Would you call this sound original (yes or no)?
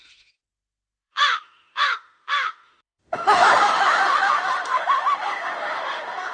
no